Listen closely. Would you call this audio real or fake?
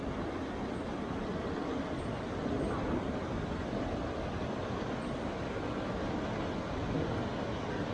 real